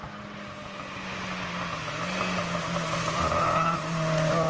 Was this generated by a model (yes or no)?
no